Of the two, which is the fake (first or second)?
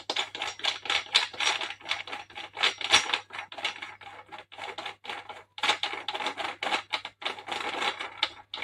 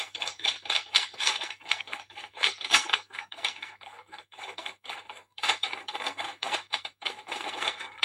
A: second